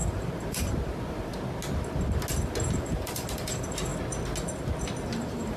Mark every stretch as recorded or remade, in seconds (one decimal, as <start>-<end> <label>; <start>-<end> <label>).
0.0-1.3 remade; 1.3-2.7 recorded; 2.7-3.9 remade; 3.9-5.0 recorded; 5.0-5.6 remade